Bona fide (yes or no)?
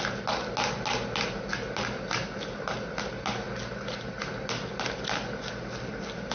yes